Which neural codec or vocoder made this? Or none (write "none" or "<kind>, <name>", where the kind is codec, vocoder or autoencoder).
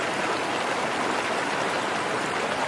none